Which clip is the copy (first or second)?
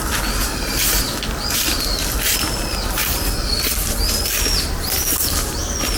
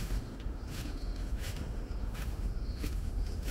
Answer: second